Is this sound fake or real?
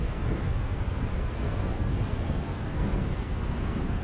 fake